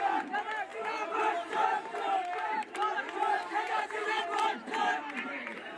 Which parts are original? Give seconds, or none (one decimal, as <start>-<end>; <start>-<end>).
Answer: 0.0-0.7; 4.2-4.8